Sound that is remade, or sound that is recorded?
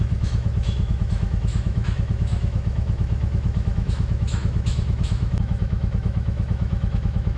remade